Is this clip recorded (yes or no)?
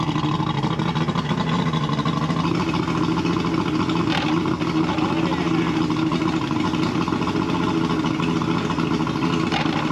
yes